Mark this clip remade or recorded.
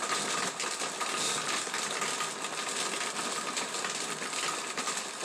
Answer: recorded